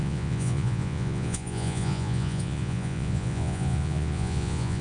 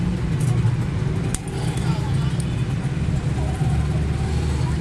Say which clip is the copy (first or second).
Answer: first